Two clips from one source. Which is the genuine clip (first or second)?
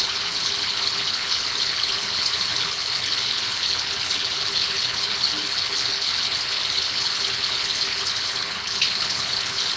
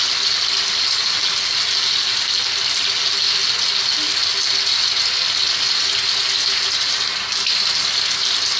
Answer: second